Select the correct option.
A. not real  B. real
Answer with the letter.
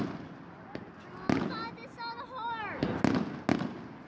B